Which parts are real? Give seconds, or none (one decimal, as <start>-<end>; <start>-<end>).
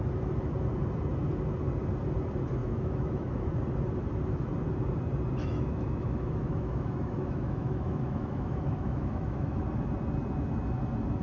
0.0-2.6; 3.5-5.4; 9.6-11.2